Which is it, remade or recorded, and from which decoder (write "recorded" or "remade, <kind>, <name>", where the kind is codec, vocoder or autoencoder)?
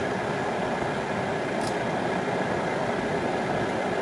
recorded